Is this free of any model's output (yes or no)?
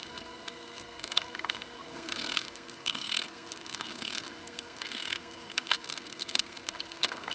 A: no